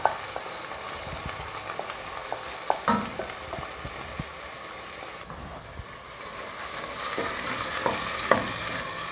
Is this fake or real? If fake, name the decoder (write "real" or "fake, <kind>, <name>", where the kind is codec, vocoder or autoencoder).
real